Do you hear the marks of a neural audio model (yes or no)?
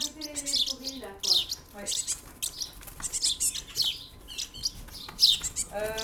no